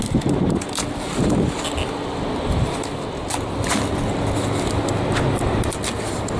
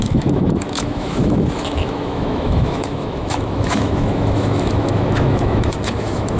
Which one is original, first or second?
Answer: first